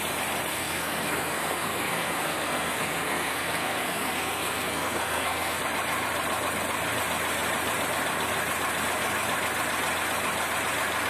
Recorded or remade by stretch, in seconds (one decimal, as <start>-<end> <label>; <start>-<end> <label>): 0.0-0.5 recorded; 0.5-5.6 remade; 5.6-11.1 recorded